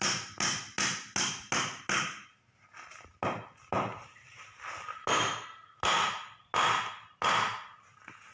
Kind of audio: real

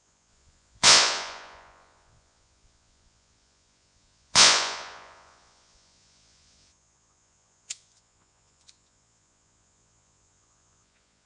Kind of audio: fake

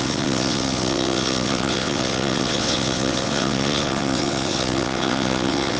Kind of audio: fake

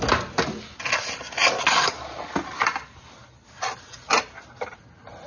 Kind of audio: real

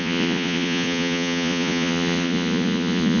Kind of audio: fake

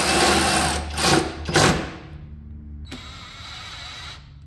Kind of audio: real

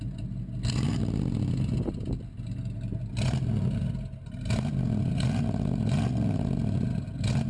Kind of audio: real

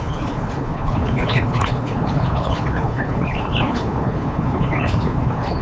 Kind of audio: fake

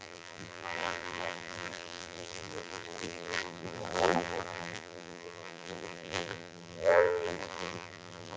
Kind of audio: fake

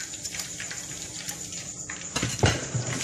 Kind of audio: fake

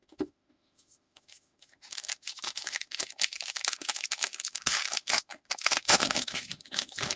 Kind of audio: fake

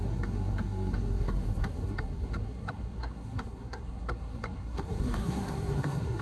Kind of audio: fake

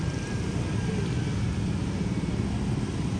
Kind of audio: real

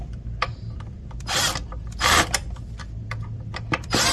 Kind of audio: fake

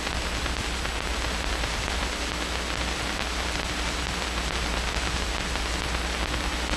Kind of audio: real